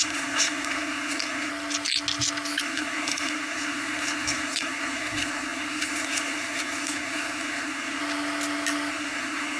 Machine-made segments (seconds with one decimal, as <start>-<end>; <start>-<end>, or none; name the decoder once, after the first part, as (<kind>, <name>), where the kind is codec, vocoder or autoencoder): 0.0-1.5 (codec, SNAC); 2.6-8.0; 8.9-9.6